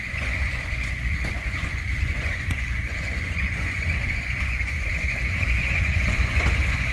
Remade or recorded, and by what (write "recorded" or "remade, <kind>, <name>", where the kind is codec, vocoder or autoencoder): remade, vocoder, Vocos